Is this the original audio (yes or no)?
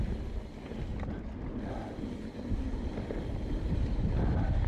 yes